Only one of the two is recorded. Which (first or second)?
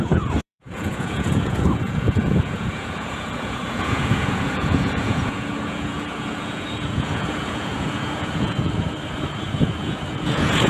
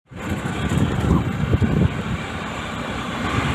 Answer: second